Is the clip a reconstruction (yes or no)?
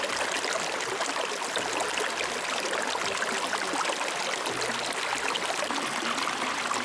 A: no